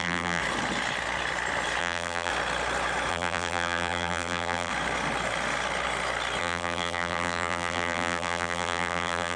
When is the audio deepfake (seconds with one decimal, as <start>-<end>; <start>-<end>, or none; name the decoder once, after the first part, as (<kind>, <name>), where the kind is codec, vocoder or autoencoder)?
0.0-0.4 (vocoder, BigVGAN v2); 1.8-2.3; 3.1-4.7; 6.4-9.4